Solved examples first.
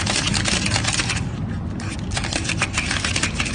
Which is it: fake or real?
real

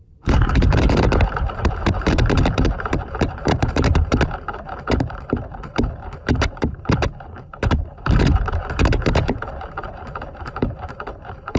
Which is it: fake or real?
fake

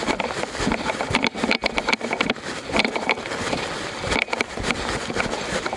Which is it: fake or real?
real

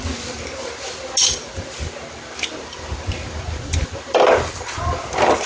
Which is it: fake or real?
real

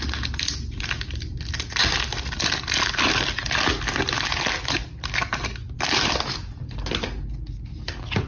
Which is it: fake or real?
real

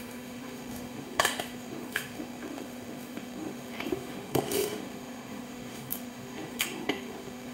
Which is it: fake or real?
fake